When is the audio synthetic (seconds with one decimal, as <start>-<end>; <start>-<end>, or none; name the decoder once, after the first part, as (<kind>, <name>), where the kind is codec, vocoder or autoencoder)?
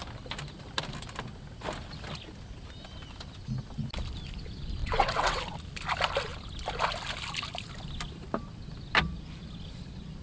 4.8-5.4 (vocoder, WaveNeXt)